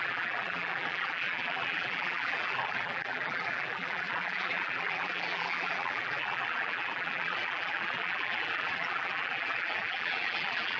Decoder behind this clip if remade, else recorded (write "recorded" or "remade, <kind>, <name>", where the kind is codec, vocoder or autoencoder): remade, vocoder, BigVGAN v2